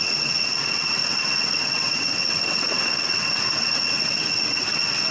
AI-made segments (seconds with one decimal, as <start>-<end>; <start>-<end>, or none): 0.0-5.1